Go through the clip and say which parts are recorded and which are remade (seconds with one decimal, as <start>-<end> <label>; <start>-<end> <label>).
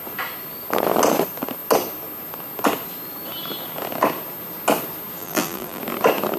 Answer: 0.0-5.2 recorded; 5.2-5.8 remade; 5.8-6.4 recorded